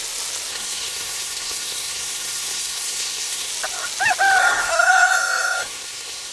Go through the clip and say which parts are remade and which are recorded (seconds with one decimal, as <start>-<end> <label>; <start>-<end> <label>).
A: 0.0-0.5 recorded; 0.5-3.5 remade; 3.5-4.4 recorded; 4.4-6.3 remade